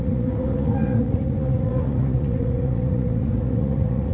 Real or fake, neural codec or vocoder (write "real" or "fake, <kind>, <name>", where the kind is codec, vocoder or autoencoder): fake, vocoder, Vocos